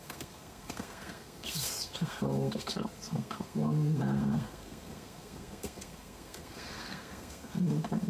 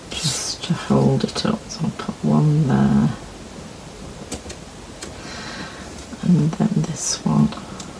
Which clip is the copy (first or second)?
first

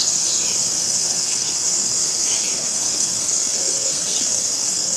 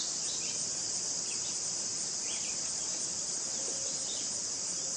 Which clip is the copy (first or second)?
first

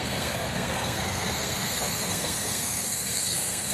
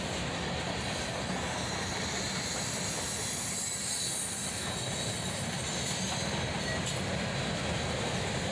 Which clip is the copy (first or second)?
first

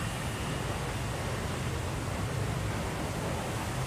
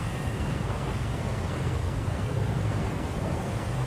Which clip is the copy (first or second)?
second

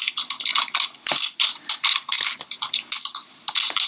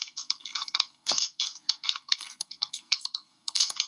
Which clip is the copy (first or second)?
second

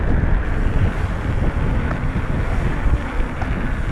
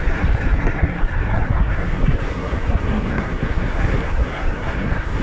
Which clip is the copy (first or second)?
second